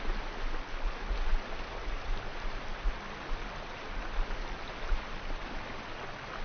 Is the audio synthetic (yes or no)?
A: no